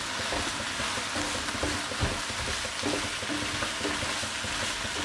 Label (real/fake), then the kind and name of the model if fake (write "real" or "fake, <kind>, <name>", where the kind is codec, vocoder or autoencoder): real